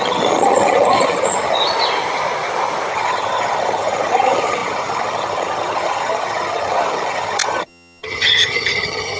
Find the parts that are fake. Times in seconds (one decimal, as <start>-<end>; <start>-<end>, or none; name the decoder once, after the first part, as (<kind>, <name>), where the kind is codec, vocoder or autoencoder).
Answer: 0.0-1.6 (vocoder, HiFi-GAN); 2.9-9.2